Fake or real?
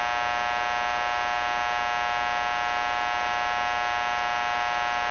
real